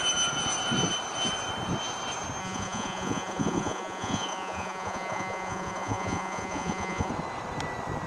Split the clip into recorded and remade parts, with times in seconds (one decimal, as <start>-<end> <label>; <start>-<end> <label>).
0.0-2.4 recorded; 2.4-7.1 remade; 7.1-8.1 recorded